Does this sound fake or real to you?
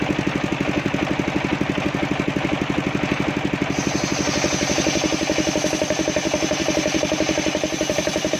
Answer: real